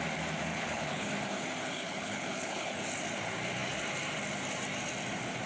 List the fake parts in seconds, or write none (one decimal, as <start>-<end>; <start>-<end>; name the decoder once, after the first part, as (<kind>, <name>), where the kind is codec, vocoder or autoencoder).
0.5-1.1 (codec, HILCodec); 1.6-2.9